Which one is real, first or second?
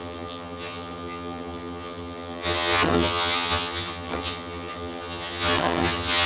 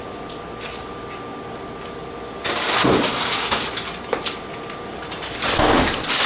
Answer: second